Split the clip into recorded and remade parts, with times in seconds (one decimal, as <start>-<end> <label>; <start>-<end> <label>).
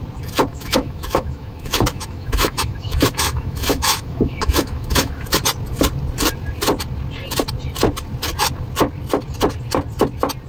0.0-0.5 recorded; 0.5-5.4 remade; 5.4-10.5 recorded